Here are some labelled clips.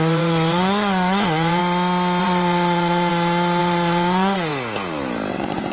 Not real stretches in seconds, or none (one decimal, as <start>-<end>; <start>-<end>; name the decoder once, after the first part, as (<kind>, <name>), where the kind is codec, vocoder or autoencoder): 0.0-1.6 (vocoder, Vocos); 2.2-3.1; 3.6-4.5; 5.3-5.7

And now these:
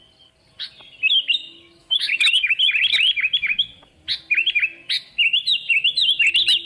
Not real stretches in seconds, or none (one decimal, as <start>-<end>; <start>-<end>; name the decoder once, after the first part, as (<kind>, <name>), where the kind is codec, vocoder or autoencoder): 1.8-2.7 (autoencoder, DAC-VAE)

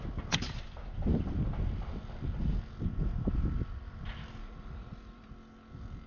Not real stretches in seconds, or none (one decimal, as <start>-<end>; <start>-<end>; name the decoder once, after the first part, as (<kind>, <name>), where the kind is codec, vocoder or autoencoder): 4.4-5.3 (vocoder, Vocos)

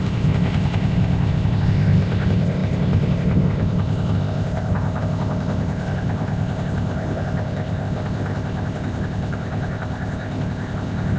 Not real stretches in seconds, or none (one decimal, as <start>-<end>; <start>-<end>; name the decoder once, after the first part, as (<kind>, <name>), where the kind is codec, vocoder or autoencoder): 0.0-11.2 (codec, ZipCodec)

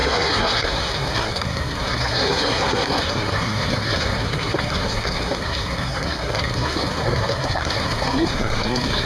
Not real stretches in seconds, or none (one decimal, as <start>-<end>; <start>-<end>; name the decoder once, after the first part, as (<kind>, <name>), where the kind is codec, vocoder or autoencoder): 0.0-9.1 (codec, SNAC)